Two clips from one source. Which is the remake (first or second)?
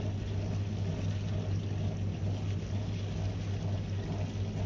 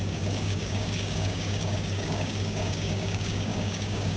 second